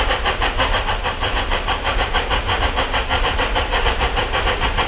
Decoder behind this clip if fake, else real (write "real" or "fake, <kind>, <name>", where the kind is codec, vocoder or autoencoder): fake, vocoder, BigVGAN v2